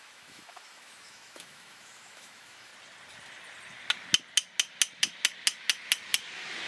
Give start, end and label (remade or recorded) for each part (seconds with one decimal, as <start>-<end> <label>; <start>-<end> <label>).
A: 0.0-2.7 remade; 2.7-6.7 recorded